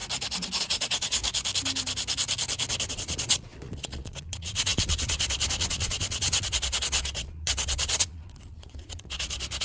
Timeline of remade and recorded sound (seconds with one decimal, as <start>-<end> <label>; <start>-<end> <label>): 0.0-0.6 recorded; 0.6-1.2 remade; 1.2-2.9 recorded; 2.9-9.6 remade